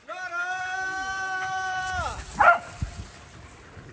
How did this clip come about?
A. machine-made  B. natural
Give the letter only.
B